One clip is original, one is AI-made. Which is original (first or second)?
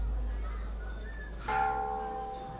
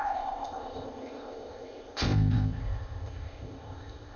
first